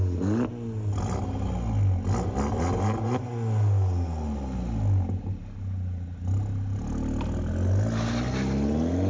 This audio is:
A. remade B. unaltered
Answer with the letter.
B